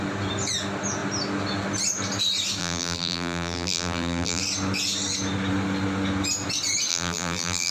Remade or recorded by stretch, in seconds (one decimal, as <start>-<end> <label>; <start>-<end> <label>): 0.0-2.6 recorded; 2.6-4.4 remade; 4.4-6.9 recorded; 6.9-7.7 remade